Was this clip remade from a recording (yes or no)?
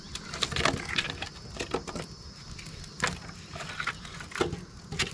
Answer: no